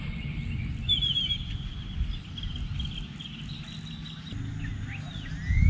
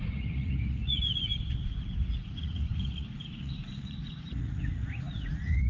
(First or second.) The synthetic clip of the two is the second